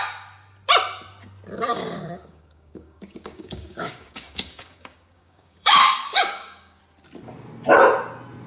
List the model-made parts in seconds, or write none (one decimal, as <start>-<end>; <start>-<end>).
1.7-6.8